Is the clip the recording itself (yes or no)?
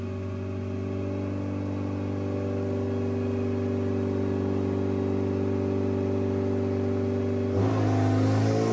yes